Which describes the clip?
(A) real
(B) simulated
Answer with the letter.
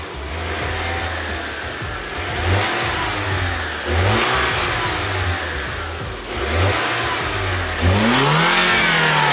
A